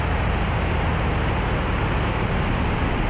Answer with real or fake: real